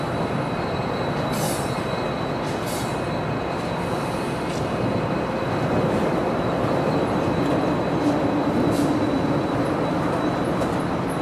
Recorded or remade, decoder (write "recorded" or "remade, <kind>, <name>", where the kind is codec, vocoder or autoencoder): recorded